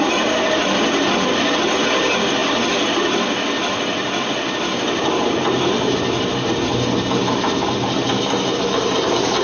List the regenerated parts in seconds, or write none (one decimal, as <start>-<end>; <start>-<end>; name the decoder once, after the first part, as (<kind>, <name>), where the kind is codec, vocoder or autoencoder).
none

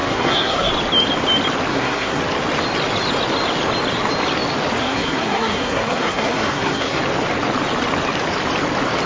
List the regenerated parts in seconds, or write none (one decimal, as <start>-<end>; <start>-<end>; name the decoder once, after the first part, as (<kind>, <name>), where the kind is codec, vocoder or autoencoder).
0.0-0.7 (codec, SNAC); 1.7-2.2; 4.8-7.0